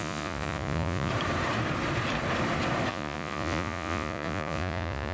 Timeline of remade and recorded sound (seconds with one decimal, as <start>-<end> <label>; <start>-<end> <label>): 0.0-1.1 remade; 1.1-2.9 recorded; 2.9-5.1 remade